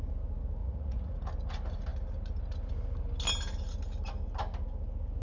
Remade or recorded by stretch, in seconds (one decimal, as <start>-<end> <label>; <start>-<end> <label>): 0.0-0.6 recorded; 0.6-1.2 remade; 1.2-5.2 recorded